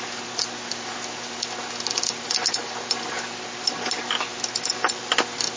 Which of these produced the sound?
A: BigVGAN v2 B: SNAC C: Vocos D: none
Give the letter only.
D